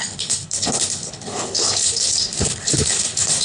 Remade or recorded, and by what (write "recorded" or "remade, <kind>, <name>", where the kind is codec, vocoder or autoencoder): remade, codec, HILCodec